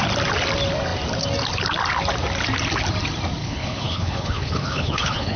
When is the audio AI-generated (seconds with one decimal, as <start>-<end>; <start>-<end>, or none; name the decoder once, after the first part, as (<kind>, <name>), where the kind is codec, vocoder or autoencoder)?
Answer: 3.4-5.4 (codec, HILCodec)